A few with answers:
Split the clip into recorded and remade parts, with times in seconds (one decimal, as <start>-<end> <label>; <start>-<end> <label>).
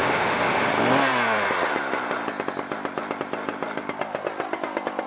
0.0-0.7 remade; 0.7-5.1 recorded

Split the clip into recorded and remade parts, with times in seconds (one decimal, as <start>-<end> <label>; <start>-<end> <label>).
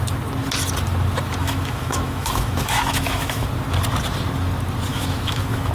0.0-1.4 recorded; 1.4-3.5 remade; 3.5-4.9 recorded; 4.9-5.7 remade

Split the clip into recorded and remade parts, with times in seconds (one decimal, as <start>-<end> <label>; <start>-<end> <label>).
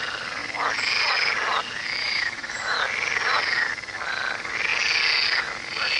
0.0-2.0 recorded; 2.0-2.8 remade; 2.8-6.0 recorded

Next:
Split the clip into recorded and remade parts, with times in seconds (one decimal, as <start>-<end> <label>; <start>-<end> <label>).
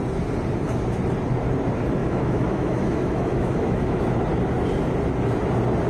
0.0-2.0 recorded; 2.0-4.0 remade; 4.0-5.9 recorded